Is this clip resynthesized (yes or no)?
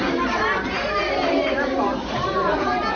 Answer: yes